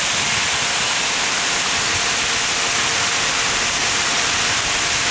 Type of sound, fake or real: real